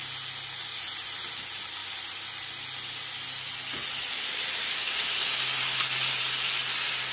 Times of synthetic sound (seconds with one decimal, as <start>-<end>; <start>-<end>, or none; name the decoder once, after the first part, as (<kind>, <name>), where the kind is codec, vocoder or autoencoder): 0.7-1.4 (vocoder, BigVGAN v2)